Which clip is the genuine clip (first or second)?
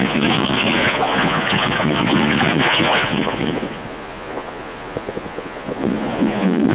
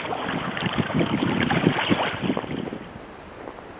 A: second